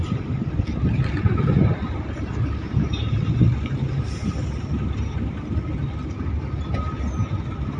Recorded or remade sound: recorded